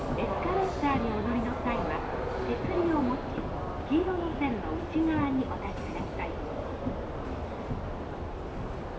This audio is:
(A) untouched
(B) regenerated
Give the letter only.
A